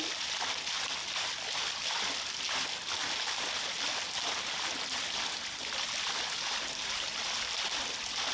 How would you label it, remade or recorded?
recorded